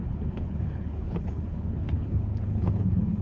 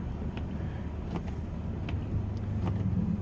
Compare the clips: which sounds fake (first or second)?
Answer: first